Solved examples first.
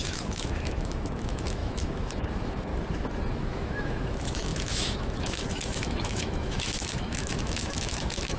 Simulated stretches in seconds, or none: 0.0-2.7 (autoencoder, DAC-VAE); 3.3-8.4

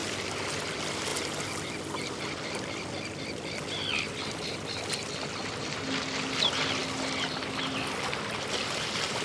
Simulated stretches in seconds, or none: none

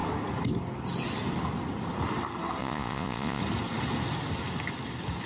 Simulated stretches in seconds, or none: 2.6-3.4 (vocoder, Vocos)